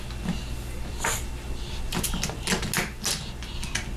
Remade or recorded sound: recorded